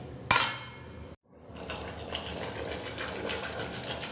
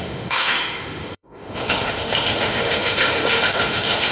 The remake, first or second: second